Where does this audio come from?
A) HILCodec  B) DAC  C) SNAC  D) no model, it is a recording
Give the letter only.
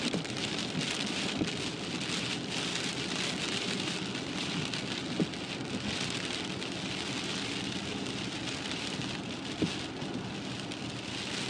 D